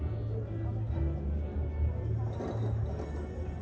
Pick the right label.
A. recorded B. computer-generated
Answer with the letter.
A